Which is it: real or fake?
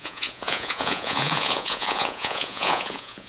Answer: fake